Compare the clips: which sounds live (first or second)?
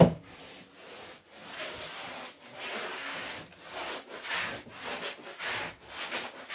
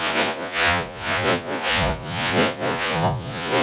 first